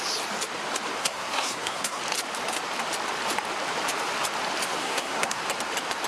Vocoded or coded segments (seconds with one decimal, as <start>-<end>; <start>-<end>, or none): 1.0-2.0; 4.8-5.4